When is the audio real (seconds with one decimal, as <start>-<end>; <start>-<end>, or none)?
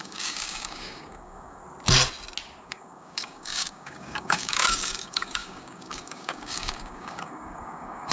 1.6-2.6